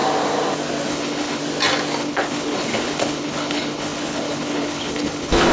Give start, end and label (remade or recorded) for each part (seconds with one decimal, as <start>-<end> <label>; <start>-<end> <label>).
0.0-0.9 recorded; 0.9-1.4 remade; 1.4-2.0 recorded; 2.0-5.5 remade